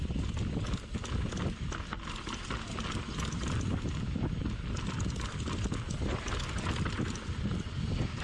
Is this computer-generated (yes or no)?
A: no